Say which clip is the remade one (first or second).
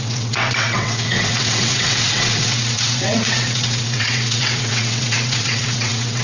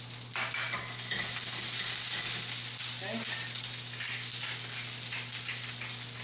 first